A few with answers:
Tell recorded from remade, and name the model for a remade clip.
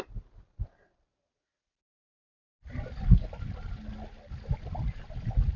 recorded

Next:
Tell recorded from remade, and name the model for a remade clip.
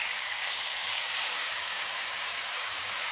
remade, codec, DAC